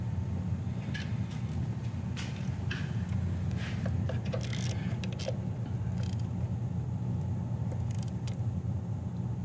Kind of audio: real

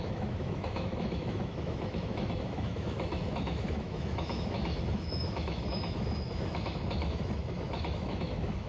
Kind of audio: fake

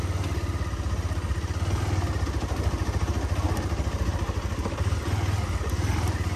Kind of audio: real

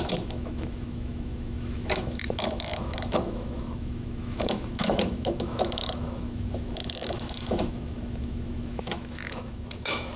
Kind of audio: fake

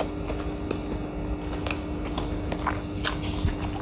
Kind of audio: real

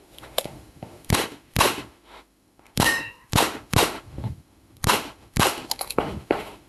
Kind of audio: fake